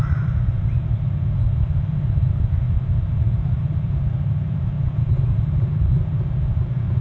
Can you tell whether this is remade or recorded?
remade